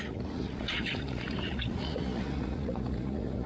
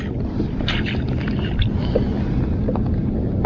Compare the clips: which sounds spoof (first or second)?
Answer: first